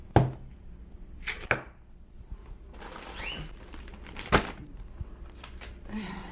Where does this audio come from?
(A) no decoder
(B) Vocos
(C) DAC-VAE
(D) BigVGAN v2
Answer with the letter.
A